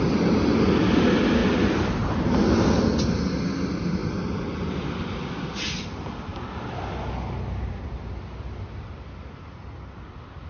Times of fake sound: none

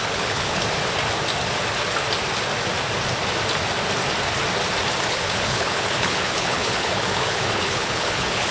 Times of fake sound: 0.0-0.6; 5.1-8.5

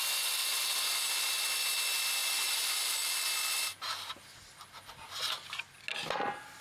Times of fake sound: 0.4-1.4; 2.2-5.2